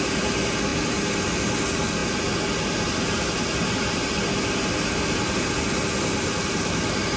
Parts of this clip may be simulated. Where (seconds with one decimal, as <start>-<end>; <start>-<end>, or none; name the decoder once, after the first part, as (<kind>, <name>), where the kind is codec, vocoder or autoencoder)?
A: none